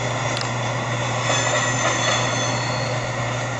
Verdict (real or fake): real